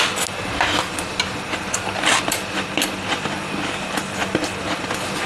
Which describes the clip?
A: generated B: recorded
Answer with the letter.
B